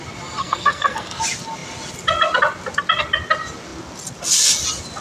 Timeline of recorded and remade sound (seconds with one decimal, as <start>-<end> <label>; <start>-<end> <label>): 0.0-0.4 recorded; 0.4-1.2 remade; 1.2-5.0 recorded